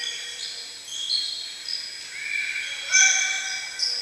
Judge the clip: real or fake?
real